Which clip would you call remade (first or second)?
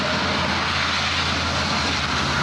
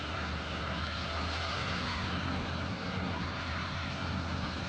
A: second